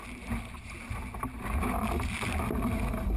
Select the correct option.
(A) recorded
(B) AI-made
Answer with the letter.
A